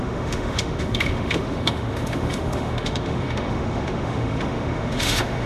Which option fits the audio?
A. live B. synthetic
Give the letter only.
B